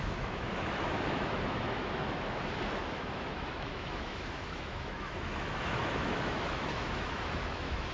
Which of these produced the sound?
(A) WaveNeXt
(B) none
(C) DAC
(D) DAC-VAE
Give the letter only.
D